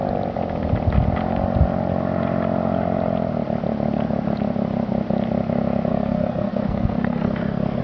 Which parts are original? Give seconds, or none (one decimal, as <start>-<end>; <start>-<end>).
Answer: 0.0-5.9